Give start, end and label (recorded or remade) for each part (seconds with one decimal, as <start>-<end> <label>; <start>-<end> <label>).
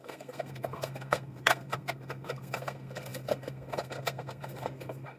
0.0-5.2 remade